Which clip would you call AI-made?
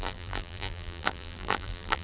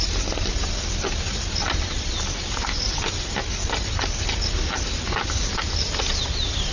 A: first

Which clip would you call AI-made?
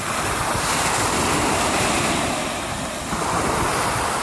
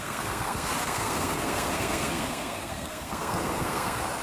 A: second